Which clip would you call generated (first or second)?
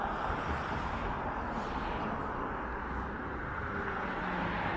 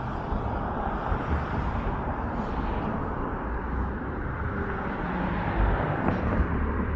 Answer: second